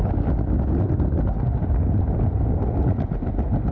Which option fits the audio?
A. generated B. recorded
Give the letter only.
B